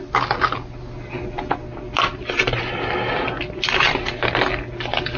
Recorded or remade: recorded